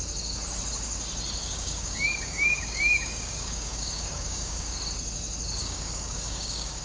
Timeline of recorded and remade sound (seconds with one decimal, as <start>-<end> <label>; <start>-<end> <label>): 0.0-1.4 recorded; 1.4-4.8 remade; 4.8-5.6 recorded; 5.6-6.8 remade